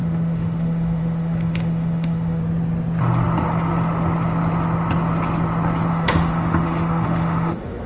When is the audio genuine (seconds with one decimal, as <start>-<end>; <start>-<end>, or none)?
2.4-5.9